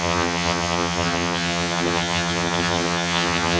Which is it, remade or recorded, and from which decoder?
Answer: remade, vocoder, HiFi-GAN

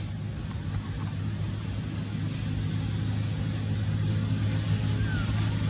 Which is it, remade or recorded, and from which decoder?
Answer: recorded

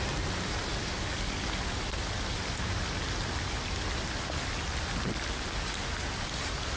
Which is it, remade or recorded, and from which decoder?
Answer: recorded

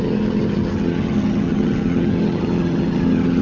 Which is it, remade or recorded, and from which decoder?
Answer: remade, vocoder, HiFi-GAN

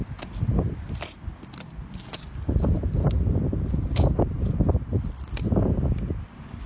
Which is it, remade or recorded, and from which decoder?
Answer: recorded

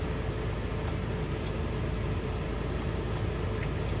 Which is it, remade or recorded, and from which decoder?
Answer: recorded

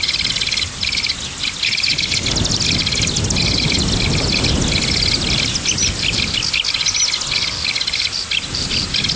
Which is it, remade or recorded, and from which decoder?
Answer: recorded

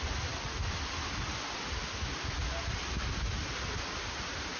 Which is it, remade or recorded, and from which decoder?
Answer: recorded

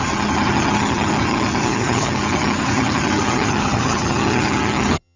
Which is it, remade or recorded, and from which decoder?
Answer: remade, vocoder, HiFi-GAN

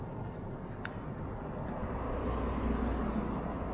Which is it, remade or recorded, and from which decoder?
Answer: recorded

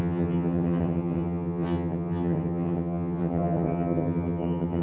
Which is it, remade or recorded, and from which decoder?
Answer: remade, vocoder, HiFi-GAN